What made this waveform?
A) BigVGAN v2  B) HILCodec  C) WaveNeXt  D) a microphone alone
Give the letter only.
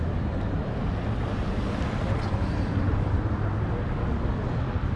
D